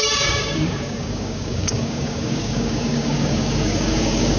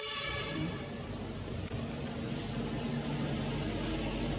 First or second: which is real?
second